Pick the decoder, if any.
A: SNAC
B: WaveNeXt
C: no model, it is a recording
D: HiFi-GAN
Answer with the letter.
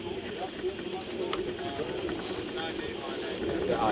C